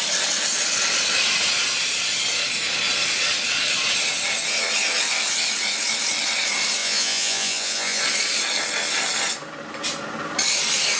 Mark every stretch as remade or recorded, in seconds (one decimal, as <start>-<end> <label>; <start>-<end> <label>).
0.0-6.8 recorded; 6.8-8.0 remade; 8.0-11.0 recorded